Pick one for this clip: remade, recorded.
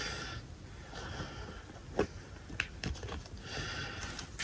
recorded